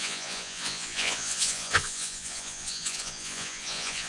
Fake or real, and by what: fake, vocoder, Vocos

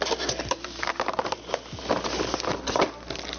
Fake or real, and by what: real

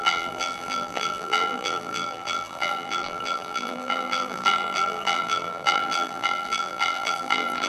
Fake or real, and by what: fake, vocoder, BigVGAN v2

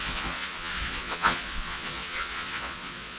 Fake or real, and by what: fake, vocoder, Vocos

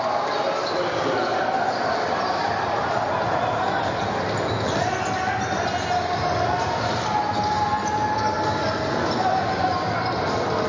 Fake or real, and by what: real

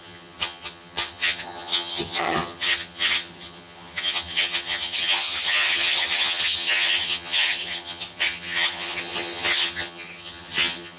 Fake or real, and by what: fake, vocoder, HiFi-GAN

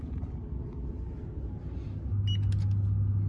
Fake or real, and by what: real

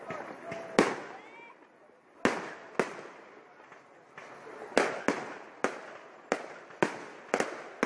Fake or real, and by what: real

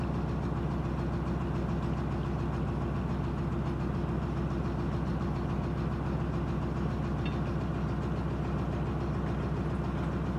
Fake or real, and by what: real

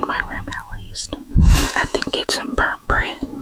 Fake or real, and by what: fake, autoencoder, DAC-VAE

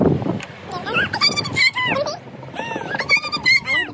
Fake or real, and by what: fake, vocoder, BigVGAN v2